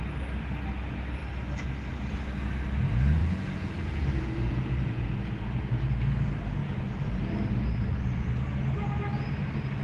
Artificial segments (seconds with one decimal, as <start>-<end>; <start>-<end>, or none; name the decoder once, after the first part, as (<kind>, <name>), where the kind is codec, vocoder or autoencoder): 3.2-5.8 (vocoder, Vocos)